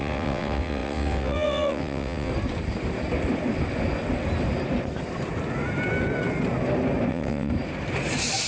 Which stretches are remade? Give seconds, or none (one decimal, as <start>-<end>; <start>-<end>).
0.0-2.3; 7.1-7.5